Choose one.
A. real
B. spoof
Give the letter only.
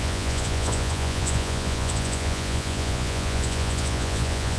B